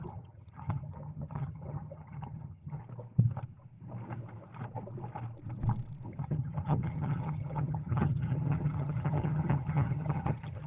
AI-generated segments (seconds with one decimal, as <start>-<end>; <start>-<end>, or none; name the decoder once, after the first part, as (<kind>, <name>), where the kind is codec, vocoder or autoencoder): 0.0-2.8 (vocoder, HiFi-GAN); 6.2-10.7